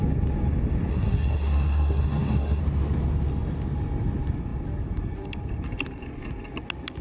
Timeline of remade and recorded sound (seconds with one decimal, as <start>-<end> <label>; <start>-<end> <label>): 0.0-0.9 recorded; 0.9-2.6 remade; 2.6-7.0 recorded